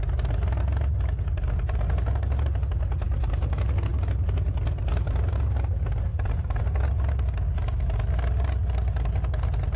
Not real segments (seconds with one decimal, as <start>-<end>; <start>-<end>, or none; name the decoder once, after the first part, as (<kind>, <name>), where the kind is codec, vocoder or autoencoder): 6.1-6.6 (vocoder, BigVGAN v2)